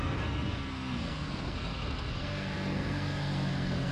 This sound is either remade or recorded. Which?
remade